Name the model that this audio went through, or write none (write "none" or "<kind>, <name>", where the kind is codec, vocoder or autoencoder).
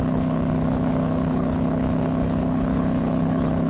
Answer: codec, HILCodec